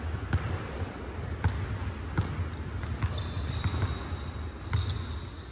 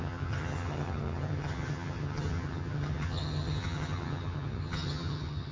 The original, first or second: first